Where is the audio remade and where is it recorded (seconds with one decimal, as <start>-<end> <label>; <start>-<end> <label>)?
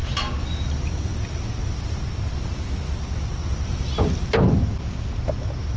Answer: 0.0-5.8 recorded